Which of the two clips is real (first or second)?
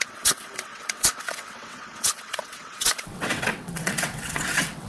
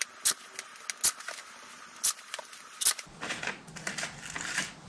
second